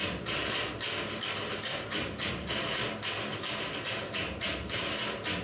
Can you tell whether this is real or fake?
real